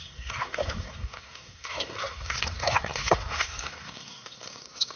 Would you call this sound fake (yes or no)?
yes